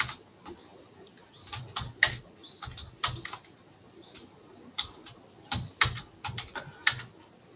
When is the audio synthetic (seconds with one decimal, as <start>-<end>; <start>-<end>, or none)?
none